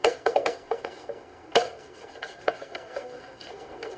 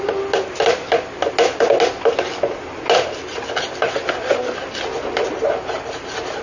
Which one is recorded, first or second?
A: second